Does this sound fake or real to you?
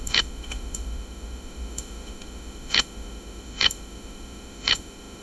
fake